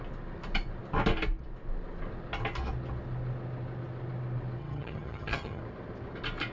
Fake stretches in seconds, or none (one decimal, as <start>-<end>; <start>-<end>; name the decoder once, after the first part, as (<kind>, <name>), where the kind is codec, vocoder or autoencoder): 4.6-5.6 (vocoder, HiFi-GAN)